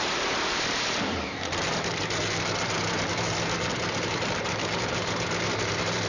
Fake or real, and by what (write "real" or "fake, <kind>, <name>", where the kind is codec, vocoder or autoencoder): fake, vocoder, BigVGAN v2